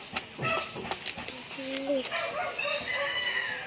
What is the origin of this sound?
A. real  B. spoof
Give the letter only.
A